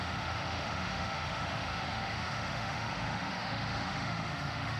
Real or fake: fake